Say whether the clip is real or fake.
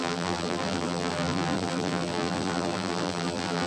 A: fake